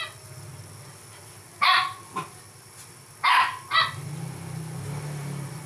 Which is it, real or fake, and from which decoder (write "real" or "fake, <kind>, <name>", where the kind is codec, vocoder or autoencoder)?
real